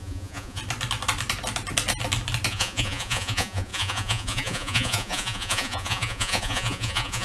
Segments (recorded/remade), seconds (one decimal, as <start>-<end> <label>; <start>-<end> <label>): 0.0-0.6 remade; 0.6-2.5 recorded; 2.5-7.2 remade